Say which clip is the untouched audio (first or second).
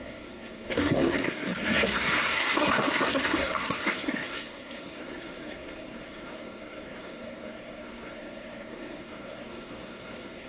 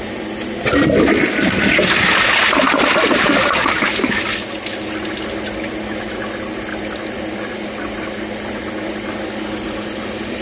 second